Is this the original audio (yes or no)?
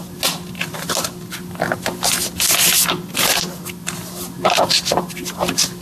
yes